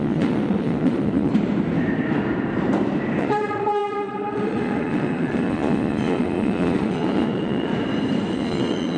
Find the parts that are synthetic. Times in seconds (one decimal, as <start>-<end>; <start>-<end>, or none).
0.0-1.3; 3.2-7.7; 8.3-9.0